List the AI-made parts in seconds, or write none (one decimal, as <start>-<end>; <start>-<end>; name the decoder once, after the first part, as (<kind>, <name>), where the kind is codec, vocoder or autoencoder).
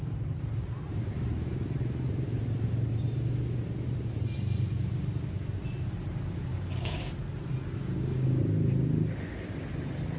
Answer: 6.5-7.1 (codec, DAC); 7.8-8.4